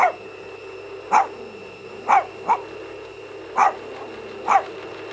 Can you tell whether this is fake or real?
real